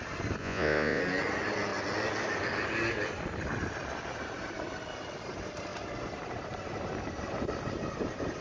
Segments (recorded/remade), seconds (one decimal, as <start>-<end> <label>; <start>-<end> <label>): 0.0-0.4 recorded; 0.4-1.0 remade; 1.0-8.4 recorded

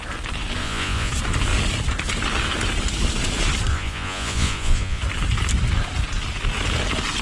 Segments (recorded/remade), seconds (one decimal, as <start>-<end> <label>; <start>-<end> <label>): 0.0-0.6 recorded; 0.6-1.1 remade; 1.1-3.7 recorded; 3.7-5.0 remade; 5.0-7.2 recorded

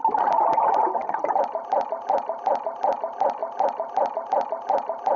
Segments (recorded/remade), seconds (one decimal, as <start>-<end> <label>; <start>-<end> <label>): 0.0-5.2 recorded

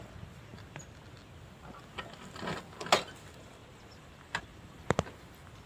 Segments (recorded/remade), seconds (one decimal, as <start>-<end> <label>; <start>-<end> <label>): 0.0-5.7 recorded

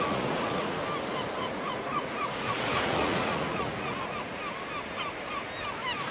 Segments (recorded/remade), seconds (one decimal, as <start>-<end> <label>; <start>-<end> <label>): 0.0-0.8 remade; 0.8-1.4 recorded; 1.4-4.4 remade; 4.4-6.1 recorded

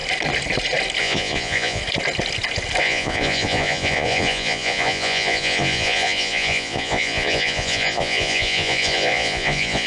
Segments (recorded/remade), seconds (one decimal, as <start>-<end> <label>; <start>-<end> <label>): 0.0-1.0 recorded; 1.0-1.8 remade; 1.8-2.8 recorded; 2.8-9.9 remade

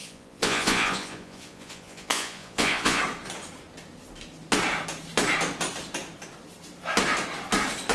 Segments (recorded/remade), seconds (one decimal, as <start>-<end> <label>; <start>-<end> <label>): 0.0-3.0 remade; 3.0-7.9 recorded